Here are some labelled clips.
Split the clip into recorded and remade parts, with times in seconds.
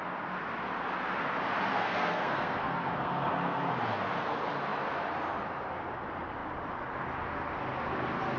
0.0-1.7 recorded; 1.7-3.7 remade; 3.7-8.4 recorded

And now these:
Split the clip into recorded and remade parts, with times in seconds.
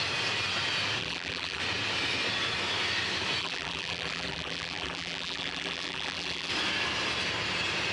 0.0-1.0 recorded; 1.0-1.6 remade; 1.6-3.4 recorded; 3.4-6.5 remade; 6.5-7.9 recorded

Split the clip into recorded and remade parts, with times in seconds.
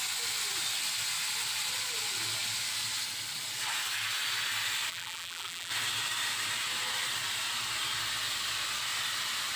0.0-4.9 recorded; 4.9-5.7 remade; 5.7-9.6 recorded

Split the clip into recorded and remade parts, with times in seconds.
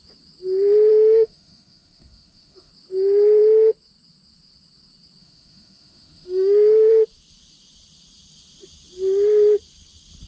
0.0-0.9 recorded; 0.9-2.7 remade; 2.7-5.2 recorded; 5.2-6.9 remade; 6.9-10.3 recorded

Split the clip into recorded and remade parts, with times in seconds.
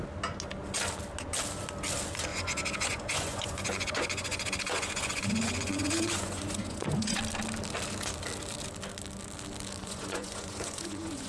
0.0-2.3 recorded; 2.3-7.2 remade; 7.2-9.8 recorded; 9.8-11.3 remade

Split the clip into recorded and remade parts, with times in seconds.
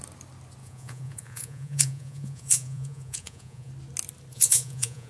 0.0-0.6 recorded; 0.6-3.7 remade; 3.7-4.3 recorded; 4.3-5.1 remade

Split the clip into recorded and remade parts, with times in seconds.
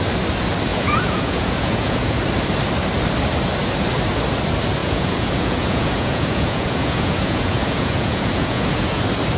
0.0-0.7 recorded; 0.7-2.2 remade; 2.2-4.8 recorded; 4.8-9.0 remade; 9.0-9.4 recorded